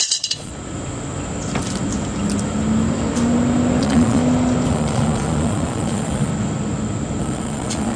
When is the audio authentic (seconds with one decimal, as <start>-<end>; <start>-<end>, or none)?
0.5-3.8; 4.2-4.7; 6.3-7.2